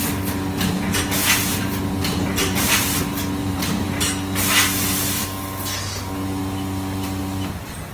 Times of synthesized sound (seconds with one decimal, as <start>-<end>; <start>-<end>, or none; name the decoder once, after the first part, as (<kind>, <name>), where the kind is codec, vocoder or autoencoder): 2.4-3.0 (vocoder, BigVGAN v2); 3.4-4.0